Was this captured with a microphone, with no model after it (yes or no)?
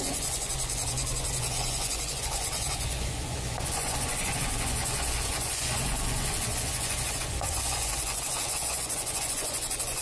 no